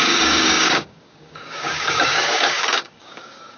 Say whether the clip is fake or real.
fake